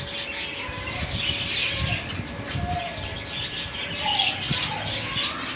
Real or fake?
real